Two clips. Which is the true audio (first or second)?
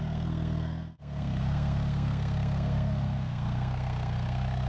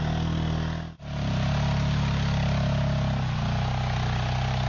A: second